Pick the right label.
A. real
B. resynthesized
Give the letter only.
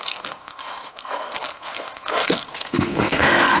B